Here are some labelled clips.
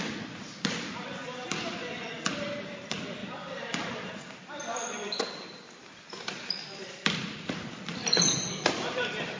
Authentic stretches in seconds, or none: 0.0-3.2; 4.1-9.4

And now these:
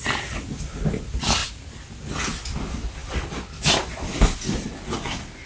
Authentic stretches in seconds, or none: 0.0-5.5

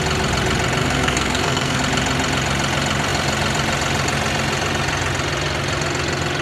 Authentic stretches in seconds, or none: 0.0-0.8; 1.8-6.4

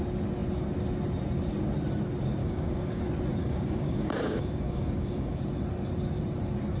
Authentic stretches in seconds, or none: 0.0-2.4; 3.0-3.4; 5.4-6.8

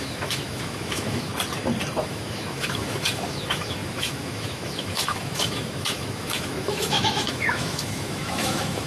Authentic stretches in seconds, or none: 1.3-2.0